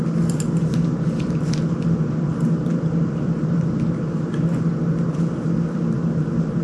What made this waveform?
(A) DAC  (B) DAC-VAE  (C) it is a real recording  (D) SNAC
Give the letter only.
C